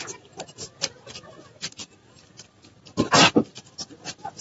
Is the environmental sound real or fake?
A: real